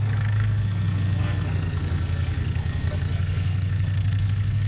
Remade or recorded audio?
remade